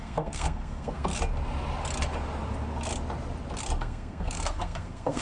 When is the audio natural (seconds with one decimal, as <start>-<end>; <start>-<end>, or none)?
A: 1.1-3.8